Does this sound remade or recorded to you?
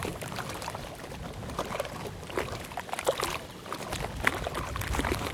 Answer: recorded